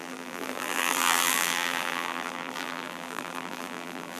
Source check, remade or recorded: remade